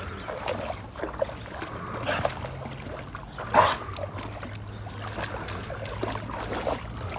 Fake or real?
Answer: real